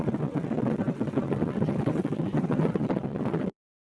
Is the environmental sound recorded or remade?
remade